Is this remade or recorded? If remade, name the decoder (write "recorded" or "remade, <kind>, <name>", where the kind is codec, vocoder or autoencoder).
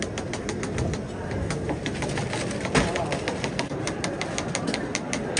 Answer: recorded